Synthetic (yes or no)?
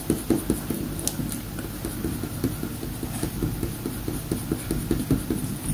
no